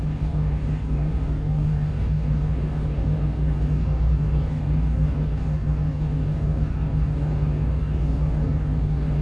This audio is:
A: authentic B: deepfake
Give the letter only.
B